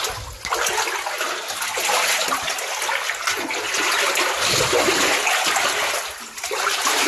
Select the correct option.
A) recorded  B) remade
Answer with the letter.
A